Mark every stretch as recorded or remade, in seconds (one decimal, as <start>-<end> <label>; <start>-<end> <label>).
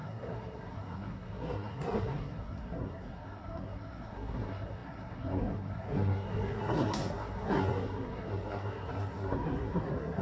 0.0-10.2 remade